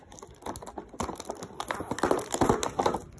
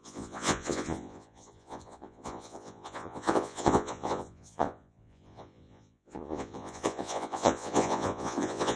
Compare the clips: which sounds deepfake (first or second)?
second